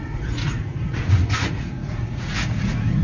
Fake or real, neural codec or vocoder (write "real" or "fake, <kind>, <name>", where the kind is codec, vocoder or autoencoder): fake, vocoder, Vocos